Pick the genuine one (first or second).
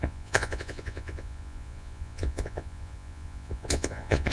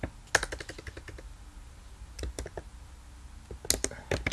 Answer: second